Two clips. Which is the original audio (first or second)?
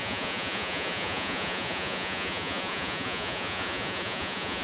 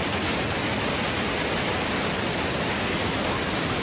second